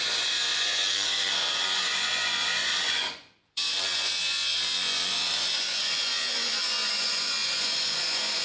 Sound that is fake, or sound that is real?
fake